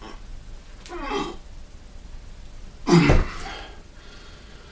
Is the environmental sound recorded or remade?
recorded